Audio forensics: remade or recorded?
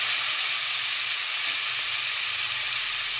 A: recorded